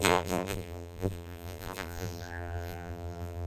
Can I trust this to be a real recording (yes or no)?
no